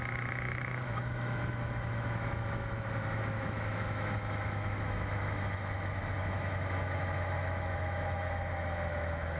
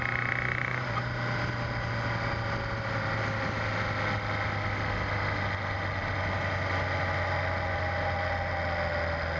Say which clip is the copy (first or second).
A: first